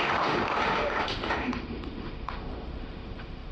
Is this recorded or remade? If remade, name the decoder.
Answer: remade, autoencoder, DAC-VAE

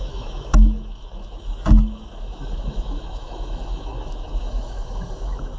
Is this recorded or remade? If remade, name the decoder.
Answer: remade, autoencoder, DAC-VAE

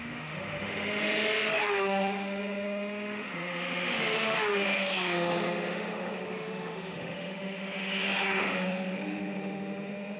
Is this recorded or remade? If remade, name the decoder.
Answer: remade, autoencoder, DAC-VAE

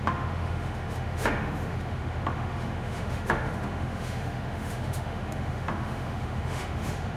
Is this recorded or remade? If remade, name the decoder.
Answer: remade, autoencoder, DAC-VAE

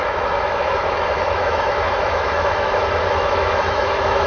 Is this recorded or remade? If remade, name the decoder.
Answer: remade, autoencoder, DAC-VAE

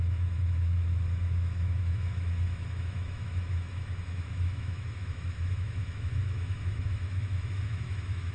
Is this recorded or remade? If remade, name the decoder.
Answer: remade, autoencoder, DAC-VAE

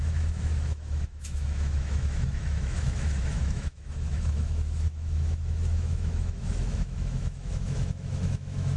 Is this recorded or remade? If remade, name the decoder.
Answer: remade, autoencoder, DAC-VAE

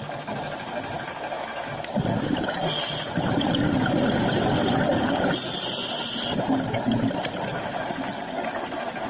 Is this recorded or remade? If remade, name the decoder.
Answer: recorded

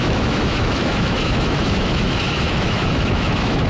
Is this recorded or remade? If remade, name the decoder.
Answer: remade, autoencoder, DAC-VAE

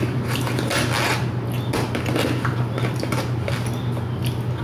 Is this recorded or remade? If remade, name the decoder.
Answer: recorded